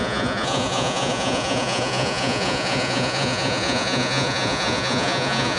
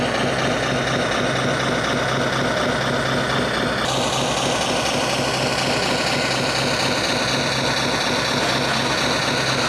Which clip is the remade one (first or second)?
first